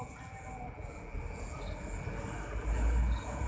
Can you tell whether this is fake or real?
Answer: real